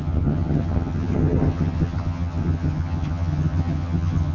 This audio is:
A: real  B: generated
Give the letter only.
B